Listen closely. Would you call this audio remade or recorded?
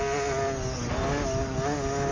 recorded